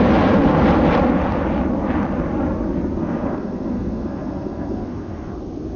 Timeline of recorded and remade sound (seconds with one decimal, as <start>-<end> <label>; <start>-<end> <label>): 0.0-3.0 recorded; 3.0-5.3 remade; 5.3-5.8 recorded